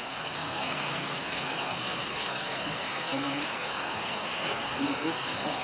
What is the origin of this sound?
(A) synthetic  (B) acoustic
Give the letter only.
A